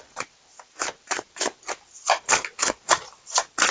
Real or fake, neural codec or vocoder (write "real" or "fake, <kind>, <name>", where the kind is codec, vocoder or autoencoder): real